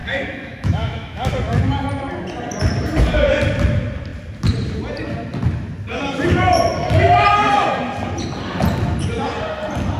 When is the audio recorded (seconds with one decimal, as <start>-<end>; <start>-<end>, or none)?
1.3-10.0